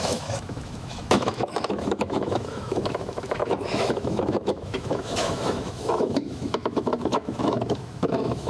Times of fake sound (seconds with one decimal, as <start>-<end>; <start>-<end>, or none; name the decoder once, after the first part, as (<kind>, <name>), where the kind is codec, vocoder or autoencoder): 0.0-8.5 (autoencoder, DAC-VAE)